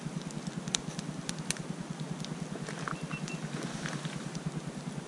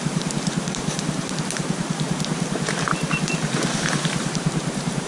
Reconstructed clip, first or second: second